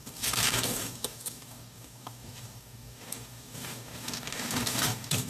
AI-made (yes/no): yes